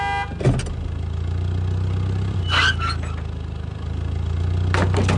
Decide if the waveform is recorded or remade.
recorded